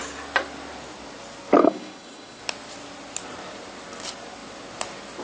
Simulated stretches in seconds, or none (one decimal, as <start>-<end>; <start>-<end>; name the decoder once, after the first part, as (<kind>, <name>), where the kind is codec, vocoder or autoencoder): 1.6-2.4 (codec, DAC)